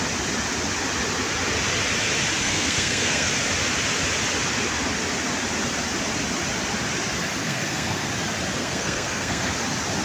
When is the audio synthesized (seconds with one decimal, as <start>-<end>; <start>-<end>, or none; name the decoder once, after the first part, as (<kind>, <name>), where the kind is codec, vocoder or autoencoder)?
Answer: 2.4-3.3 (codec, SNAC); 7.4-8.1; 8.6-9.5